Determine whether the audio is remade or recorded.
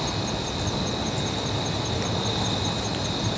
remade